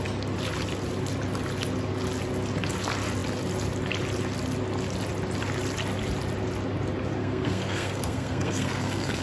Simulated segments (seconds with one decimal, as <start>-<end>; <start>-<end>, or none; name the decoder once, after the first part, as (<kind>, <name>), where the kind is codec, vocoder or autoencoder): 7.2-9.2 (codec, SNAC)